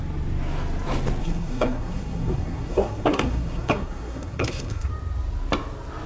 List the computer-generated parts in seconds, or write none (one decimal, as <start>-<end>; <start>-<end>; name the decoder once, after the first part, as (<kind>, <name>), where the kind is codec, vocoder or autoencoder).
1.2-4.9 (codec, SNAC)